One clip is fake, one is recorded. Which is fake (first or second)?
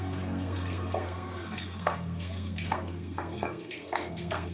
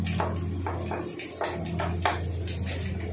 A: first